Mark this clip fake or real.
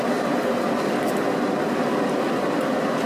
real